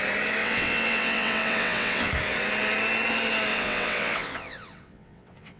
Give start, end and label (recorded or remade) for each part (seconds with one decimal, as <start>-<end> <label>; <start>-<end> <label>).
0.0-0.4 recorded; 0.4-2.1 remade; 2.1-3.5 recorded; 3.5-5.6 remade